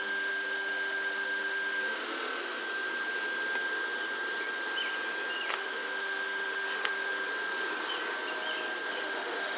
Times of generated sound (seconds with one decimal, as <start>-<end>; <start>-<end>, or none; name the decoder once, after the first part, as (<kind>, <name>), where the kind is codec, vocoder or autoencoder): 0.0-2.6 (autoencoder, DAC-VAE); 5.5-7.3; 8.9-9.6